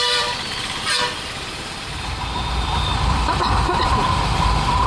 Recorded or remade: remade